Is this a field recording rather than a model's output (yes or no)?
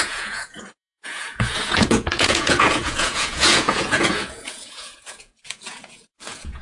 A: no